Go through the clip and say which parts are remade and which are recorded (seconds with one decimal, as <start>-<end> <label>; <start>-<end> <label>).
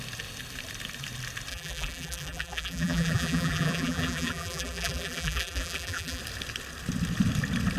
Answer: 0.0-1.5 recorded; 1.5-6.2 remade; 6.2-7.8 recorded